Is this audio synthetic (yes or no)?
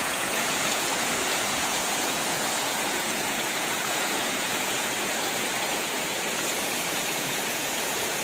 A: yes